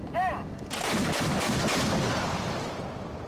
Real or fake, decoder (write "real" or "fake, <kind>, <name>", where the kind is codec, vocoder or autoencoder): real